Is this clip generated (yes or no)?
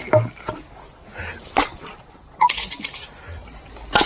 no